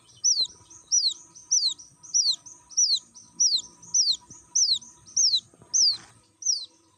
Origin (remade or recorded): recorded